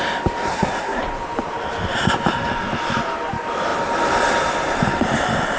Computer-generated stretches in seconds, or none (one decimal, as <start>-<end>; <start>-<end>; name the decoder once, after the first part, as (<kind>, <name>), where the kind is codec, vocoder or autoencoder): 0.5-1.0 (codec, SNAC)